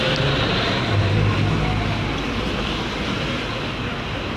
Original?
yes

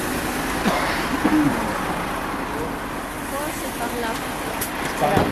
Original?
yes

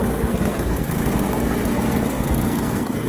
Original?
no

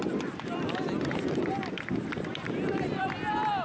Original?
yes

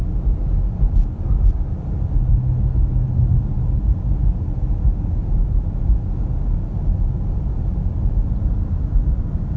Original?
yes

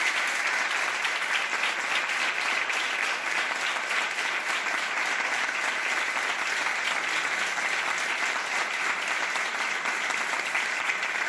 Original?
yes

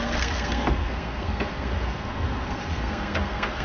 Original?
no